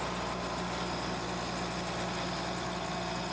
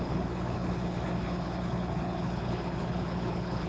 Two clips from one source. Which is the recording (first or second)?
first